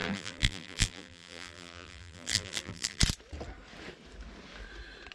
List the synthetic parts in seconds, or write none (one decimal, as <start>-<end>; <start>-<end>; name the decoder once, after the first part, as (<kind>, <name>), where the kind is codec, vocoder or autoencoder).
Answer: 0.0-3.0 (vocoder, BigVGAN v2)